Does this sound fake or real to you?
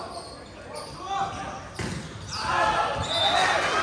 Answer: real